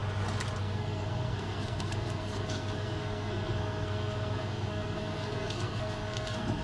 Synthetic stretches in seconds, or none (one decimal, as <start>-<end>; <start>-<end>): 0.6-6.6